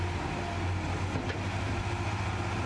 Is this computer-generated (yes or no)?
no